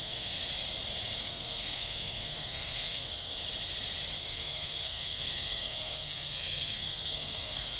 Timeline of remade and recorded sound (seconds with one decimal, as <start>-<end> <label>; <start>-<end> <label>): 0.0-0.4 remade; 0.4-1.2 recorded; 1.2-3.3 remade; 3.3-4.2 recorded; 4.2-7.8 remade